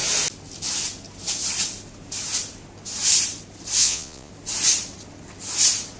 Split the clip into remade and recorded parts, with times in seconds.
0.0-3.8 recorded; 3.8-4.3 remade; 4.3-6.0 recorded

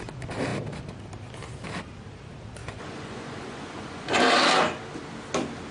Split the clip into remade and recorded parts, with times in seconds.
0.0-2.6 recorded; 2.6-4.2 remade; 4.2-5.7 recorded

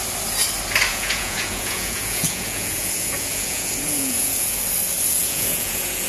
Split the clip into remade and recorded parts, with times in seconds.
0.0-0.9 recorded; 0.9-4.6 remade; 4.6-5.2 recorded; 5.2-6.1 remade

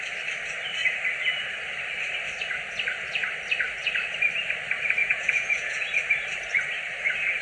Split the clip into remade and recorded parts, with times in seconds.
0.0-5.0 recorded; 5.0-5.8 remade; 5.8-7.4 recorded

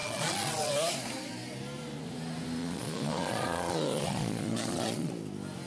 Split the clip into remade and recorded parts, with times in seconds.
0.0-0.7 remade; 0.7-2.6 recorded; 2.6-5.1 remade; 5.1-5.7 recorded

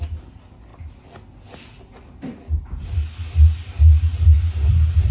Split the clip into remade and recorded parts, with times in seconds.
0.0-5.1 recorded